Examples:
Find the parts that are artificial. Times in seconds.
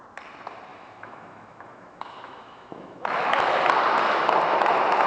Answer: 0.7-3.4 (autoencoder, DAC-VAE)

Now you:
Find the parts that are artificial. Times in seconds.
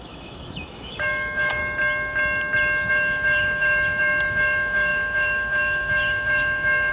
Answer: 0.0-1.6 (autoencoder, DAC-VAE); 2.9-6.9